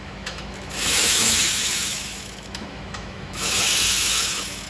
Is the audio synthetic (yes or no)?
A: yes